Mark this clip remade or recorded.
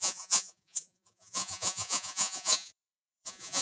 remade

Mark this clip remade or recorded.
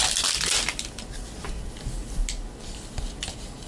recorded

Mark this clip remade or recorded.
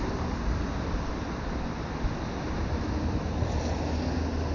recorded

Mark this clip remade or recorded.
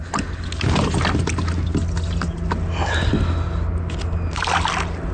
recorded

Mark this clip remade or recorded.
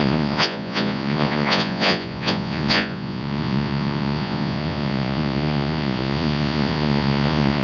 remade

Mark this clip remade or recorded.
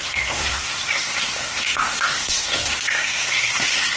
remade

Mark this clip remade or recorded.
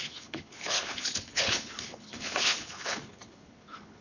remade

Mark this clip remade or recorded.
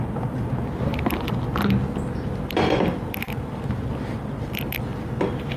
recorded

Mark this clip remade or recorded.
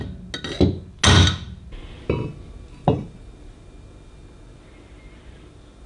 recorded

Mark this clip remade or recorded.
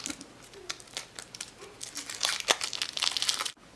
recorded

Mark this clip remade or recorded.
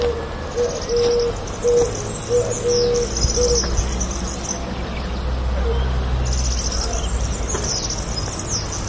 recorded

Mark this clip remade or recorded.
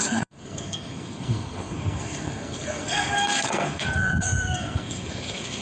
remade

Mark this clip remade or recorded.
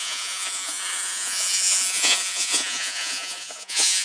remade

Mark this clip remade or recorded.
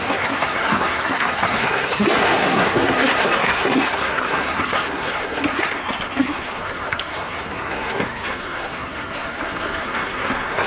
remade